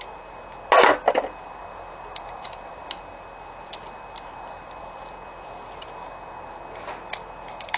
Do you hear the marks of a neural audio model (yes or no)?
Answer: no